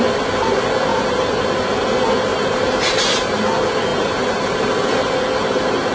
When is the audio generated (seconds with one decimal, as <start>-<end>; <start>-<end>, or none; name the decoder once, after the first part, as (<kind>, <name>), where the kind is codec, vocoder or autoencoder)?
0.9-1.4 (vocoder, BigVGAN v2); 2.3-3.4; 3.9-4.7